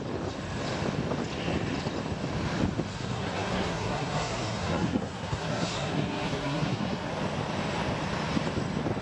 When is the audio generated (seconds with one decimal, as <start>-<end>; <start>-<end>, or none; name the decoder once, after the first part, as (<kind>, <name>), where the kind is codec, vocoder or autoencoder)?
2.9-7.1 (codec, SNAC)